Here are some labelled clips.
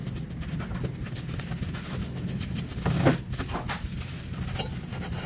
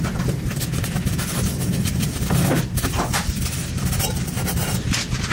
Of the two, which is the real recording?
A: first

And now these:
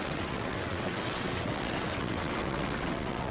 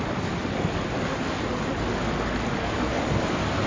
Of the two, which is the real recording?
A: second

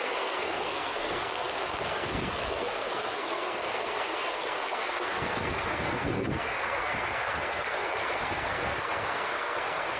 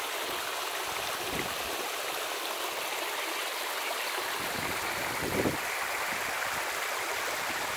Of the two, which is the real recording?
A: second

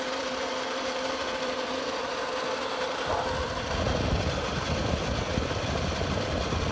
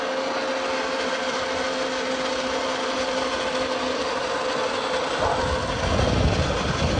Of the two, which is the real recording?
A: second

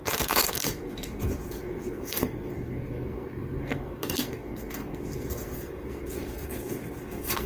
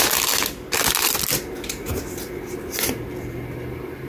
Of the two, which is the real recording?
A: second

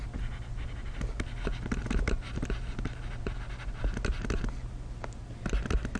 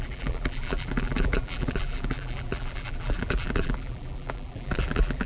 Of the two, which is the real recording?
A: first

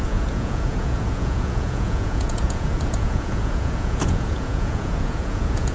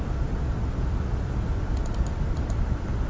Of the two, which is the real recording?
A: second